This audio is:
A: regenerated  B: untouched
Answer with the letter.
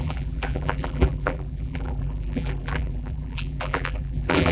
A